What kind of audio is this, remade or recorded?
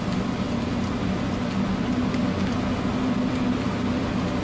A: recorded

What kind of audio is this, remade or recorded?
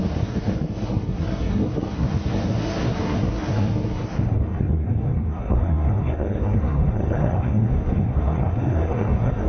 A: remade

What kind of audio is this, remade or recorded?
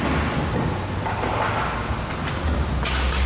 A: recorded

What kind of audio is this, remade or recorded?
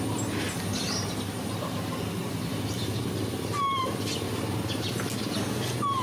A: recorded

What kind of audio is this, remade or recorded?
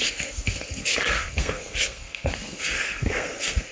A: remade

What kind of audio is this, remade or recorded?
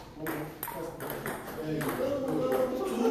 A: recorded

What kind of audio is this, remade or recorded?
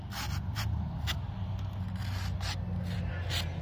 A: recorded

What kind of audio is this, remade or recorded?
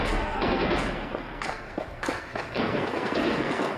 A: remade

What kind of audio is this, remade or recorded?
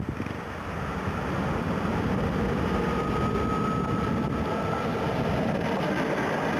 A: recorded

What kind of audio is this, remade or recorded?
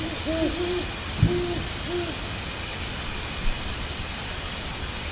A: recorded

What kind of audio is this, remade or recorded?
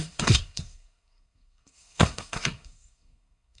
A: remade